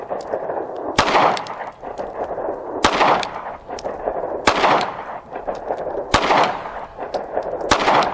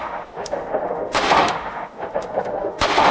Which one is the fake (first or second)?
second